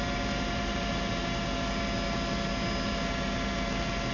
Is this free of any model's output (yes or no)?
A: yes